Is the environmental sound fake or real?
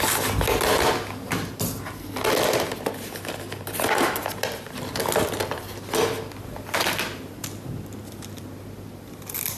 real